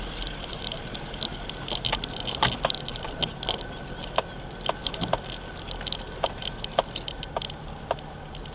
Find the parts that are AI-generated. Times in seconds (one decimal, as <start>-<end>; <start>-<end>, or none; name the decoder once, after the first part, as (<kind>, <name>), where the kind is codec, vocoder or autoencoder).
none